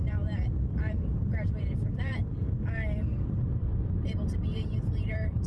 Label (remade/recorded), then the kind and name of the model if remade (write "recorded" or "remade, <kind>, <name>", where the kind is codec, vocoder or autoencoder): remade, vocoder, BigVGAN v2